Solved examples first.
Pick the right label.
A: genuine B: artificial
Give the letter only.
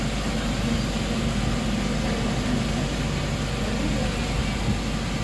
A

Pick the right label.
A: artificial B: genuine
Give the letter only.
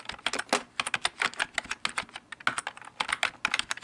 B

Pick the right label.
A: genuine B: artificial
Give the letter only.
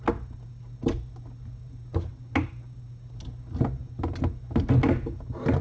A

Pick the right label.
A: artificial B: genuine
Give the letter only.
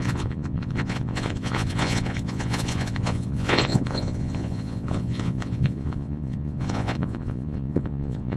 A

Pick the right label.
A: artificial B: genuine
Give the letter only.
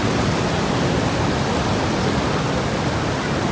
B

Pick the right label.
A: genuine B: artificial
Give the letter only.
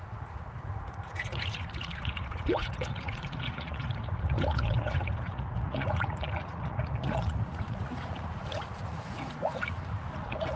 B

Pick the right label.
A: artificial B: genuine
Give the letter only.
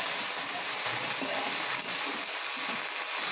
B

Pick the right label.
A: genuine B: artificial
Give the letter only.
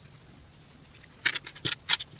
A